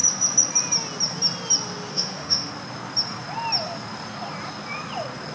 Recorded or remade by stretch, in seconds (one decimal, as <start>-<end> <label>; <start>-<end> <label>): 0.0-1.9 recorded; 1.9-2.5 remade; 2.5-5.3 recorded